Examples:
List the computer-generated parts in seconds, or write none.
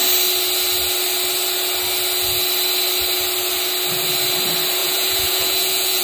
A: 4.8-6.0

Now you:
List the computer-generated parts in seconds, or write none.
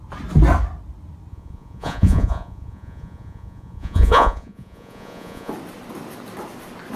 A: 1.3-5.5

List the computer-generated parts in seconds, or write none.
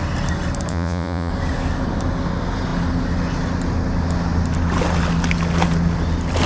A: 0.7-1.3